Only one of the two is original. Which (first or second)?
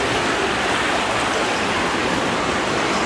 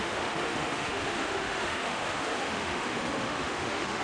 first